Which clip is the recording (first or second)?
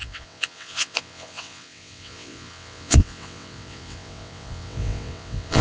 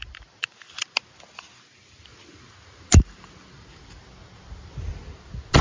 second